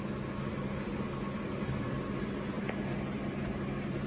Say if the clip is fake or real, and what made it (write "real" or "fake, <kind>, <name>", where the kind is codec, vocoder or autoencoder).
real